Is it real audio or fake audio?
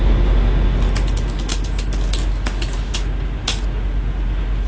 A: real